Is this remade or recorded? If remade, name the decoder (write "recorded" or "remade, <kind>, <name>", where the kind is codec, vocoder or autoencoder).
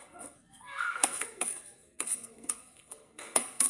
remade, codec, SNAC